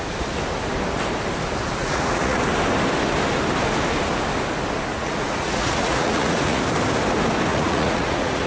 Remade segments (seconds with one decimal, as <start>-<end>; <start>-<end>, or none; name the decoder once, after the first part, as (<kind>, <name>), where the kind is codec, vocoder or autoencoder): 1.8-2.5 (vocoder, Vocos); 4.9-6.6; 7.5-8.5